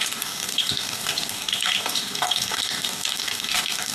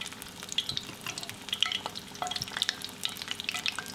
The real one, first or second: second